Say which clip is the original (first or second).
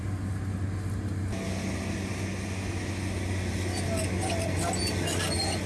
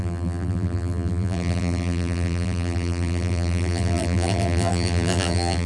first